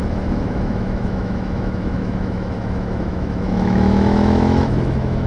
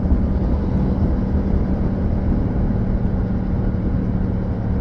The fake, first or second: first